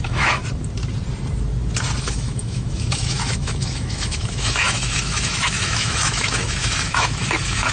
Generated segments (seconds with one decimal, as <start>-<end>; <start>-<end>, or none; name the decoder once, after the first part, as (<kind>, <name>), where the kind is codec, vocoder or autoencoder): 0.0-0.4 (autoencoder, DAC-VAE); 2.0-7.7